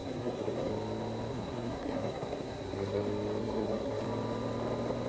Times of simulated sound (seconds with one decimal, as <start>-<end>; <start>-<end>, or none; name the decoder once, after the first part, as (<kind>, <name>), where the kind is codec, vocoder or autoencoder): 0.0-0.7 (codec, SNAC); 1.3-3.0; 3.4-4.0